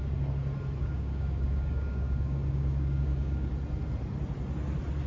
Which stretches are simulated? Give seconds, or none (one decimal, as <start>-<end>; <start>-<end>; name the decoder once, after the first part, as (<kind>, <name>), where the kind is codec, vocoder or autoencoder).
0.8-3.5 (codec, DAC)